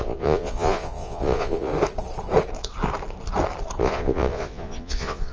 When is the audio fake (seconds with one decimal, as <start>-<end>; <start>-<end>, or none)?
0.0-1.7; 3.8-5.3